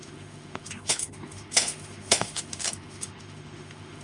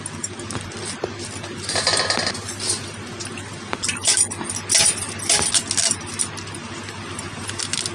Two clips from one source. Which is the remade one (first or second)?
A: first